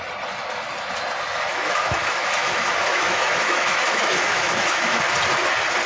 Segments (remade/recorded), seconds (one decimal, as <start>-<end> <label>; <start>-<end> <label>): 0.0-1.5 recorded; 1.5-5.0 remade; 5.0-5.9 recorded